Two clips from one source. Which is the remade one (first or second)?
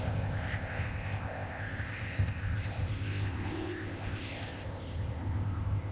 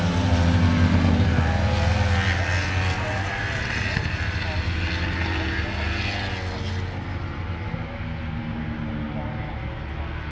first